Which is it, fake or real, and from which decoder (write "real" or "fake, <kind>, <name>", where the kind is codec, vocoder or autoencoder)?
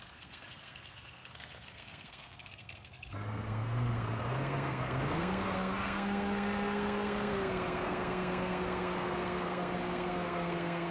fake, codec, SNAC